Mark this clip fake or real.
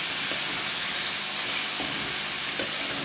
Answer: real